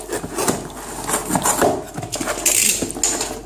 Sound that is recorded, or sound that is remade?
recorded